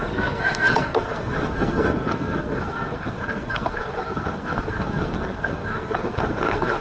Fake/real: fake